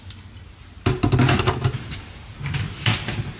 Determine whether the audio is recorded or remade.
recorded